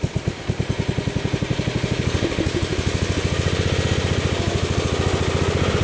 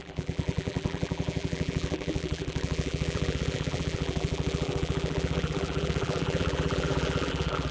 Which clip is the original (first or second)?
first